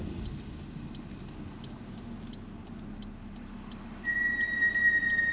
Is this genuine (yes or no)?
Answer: yes